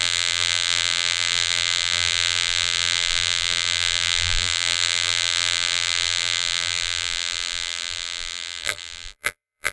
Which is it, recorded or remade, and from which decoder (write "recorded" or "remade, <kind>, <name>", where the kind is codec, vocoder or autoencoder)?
remade, vocoder, BigVGAN v2